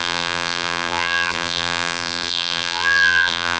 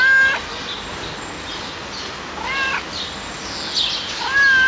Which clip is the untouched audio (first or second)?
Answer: second